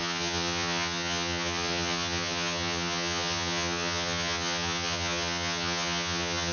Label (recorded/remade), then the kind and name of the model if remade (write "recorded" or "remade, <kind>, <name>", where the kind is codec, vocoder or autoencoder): remade, vocoder, HiFi-GAN